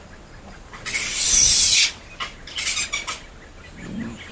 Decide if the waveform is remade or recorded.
recorded